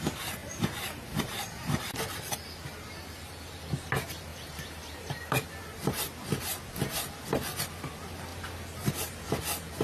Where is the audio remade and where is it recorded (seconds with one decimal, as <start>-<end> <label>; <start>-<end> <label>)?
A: 0.0-0.4 recorded; 0.4-1.9 remade; 1.9-4.3 recorded; 4.3-5.9 remade; 5.9-9.8 recorded